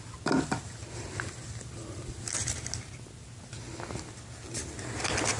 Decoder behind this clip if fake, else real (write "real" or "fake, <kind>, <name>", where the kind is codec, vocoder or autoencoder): real